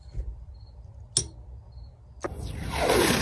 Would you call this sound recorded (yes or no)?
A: yes